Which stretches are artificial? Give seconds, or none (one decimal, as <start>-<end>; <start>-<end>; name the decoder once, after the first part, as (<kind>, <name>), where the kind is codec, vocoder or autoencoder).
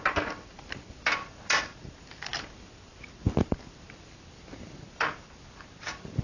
none